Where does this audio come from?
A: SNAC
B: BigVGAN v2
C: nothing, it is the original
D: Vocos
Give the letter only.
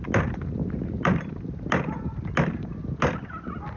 C